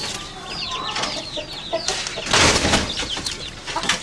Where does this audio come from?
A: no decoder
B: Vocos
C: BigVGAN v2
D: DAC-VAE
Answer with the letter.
A